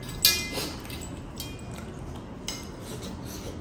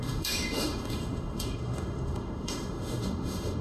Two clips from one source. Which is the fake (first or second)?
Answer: second